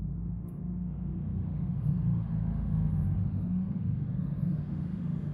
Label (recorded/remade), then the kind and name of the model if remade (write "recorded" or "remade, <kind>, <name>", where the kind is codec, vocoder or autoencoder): remade, autoencoder, DAC-VAE